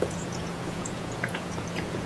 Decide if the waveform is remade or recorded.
remade